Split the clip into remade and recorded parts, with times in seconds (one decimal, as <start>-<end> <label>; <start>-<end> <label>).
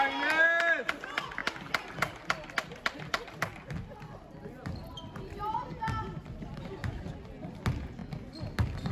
0.0-8.9 recorded